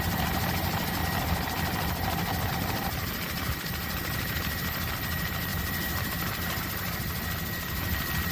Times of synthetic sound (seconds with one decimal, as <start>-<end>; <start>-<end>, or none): 0.0-1.0; 2.5-8.3